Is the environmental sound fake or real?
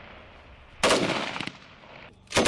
real